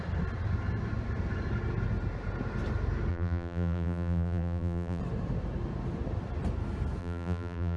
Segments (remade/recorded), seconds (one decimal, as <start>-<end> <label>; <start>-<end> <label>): 0.0-3.1 recorded; 3.1-5.0 remade; 5.0-7.0 recorded; 7.0-7.8 remade